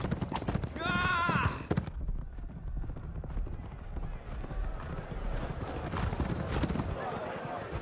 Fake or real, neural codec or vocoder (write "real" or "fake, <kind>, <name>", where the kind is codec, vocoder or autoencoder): real